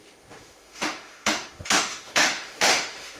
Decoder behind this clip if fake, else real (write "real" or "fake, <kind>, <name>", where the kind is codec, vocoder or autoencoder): fake, autoencoder, DAC-VAE